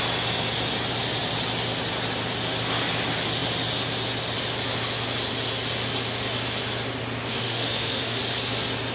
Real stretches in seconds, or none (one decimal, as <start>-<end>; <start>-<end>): 0.0-7.3; 8.2-8.9